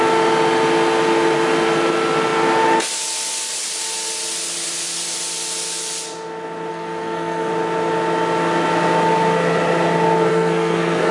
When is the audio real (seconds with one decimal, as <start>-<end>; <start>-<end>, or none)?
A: 0.0-6.7; 7.5-10.3